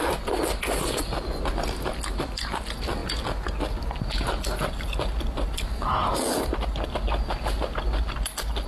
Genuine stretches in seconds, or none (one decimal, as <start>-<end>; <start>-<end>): 0.0-8.7